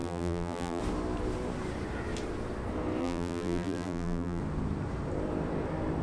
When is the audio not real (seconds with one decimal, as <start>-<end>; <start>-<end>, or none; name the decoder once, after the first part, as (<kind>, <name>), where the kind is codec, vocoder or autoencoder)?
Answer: 0.0-0.8 (vocoder, BigVGAN v2); 3.0-4.4